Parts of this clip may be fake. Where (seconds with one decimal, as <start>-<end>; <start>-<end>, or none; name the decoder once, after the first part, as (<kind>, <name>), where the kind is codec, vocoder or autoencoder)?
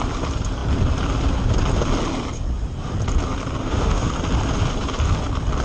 3.6-4.1 (autoencoder, DAC-VAE)